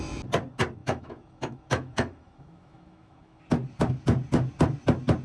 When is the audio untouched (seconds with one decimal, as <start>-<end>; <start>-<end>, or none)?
0.0-0.8; 3.4-5.2